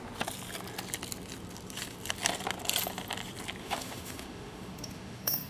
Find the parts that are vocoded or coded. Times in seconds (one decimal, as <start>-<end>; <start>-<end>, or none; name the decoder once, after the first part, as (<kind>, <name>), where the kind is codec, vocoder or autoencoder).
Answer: 3.6-5.5 (autoencoder, DAC-VAE)